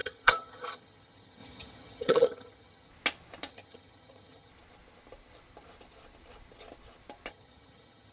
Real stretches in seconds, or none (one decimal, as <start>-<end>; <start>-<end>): 2.9-3.5; 4.5-7.3